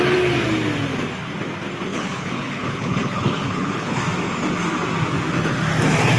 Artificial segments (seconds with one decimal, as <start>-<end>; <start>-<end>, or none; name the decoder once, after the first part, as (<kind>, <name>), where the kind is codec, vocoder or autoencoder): 1.9-4.0 (codec, HILCodec)